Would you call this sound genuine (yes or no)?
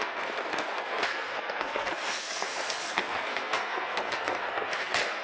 no